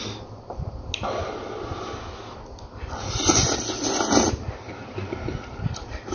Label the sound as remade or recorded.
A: recorded